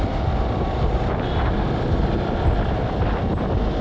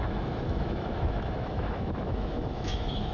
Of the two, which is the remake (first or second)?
second